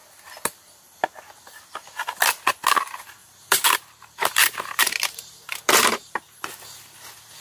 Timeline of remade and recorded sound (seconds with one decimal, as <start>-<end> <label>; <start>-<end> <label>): 0.0-3.2 recorded; 3.2-6.2 remade; 6.2-7.4 recorded